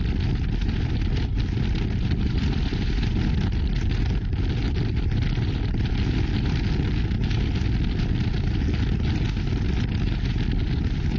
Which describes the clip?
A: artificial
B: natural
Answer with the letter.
B